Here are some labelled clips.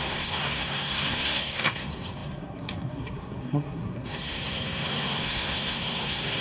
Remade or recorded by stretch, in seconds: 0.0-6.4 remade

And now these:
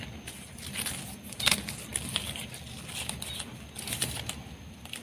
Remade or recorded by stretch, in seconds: 0.0-1.9 recorded; 1.9-2.6 remade; 2.6-5.0 recorded

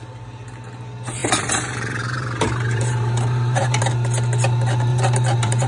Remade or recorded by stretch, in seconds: 0.0-1.2 recorded; 1.2-3.8 remade; 3.8-4.9 recorded; 4.9-5.7 remade

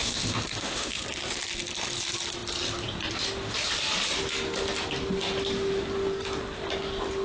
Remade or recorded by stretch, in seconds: 0.0-1.0 remade; 1.0-7.2 recorded

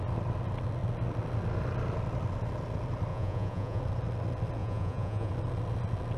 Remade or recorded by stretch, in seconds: 0.0-3.1 recorded; 3.1-3.8 remade; 3.8-4.6 recorded; 4.6-5.3 remade; 5.3-6.2 recorded

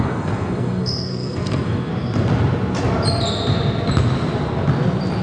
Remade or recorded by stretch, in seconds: 0.0-1.9 remade; 1.9-5.2 recorded